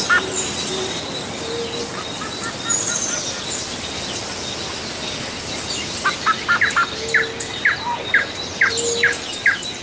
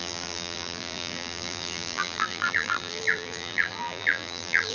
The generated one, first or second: second